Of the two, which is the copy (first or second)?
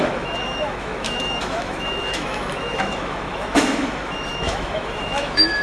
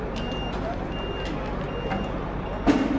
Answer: first